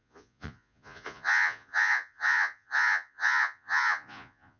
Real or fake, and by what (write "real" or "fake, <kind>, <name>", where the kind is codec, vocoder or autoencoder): fake, vocoder, Vocos